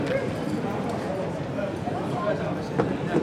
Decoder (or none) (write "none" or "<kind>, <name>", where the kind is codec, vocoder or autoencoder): vocoder, BigVGAN v2